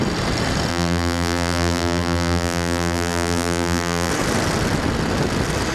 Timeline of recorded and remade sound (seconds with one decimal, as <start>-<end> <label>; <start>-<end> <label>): 0.0-0.7 recorded; 0.7-4.1 remade; 4.1-5.7 recorded